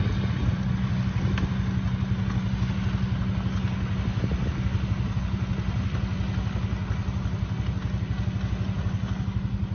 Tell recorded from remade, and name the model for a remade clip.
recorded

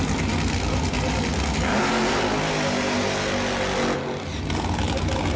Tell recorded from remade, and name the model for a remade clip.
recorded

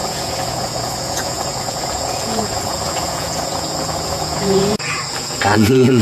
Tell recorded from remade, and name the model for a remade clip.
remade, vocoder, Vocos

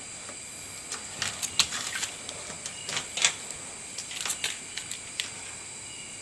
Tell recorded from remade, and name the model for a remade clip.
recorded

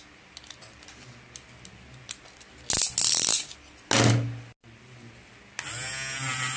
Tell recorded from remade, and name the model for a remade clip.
recorded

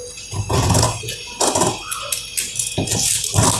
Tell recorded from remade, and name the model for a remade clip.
recorded